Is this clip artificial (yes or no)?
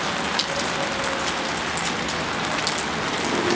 no